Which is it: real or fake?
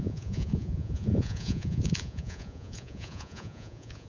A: fake